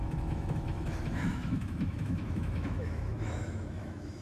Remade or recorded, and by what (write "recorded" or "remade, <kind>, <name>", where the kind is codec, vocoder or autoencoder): remade, autoencoder, DAC-VAE